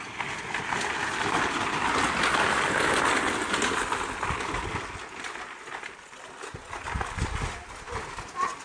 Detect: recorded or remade recorded